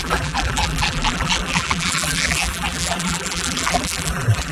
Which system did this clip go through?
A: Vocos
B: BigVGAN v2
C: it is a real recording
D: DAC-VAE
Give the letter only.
B